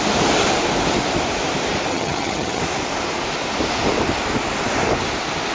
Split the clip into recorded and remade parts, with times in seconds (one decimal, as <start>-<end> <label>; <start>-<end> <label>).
0.0-1.9 recorded; 1.9-2.6 remade; 2.6-5.5 recorded